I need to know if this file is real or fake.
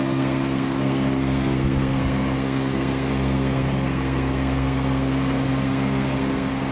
fake